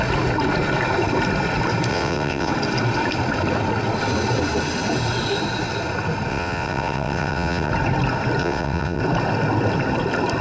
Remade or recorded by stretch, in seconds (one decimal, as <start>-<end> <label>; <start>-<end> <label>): 0.0-1.9 recorded; 1.9-2.5 remade; 2.5-6.3 recorded; 6.3-7.7 remade; 7.7-8.4 recorded; 8.4-9.0 remade; 9.0-10.4 recorded